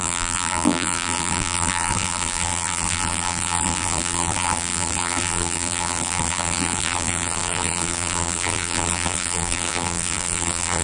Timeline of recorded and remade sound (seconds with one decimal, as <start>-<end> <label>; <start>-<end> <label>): 0.0-10.8 remade